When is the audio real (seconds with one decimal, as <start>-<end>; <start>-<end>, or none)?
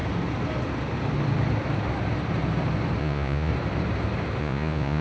0.0-3.0; 3.5-4.4